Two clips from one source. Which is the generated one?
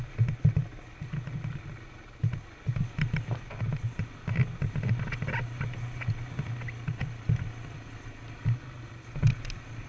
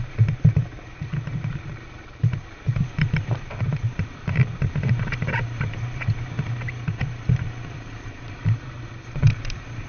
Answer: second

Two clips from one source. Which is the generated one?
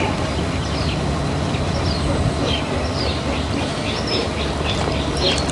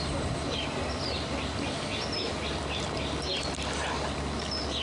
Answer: first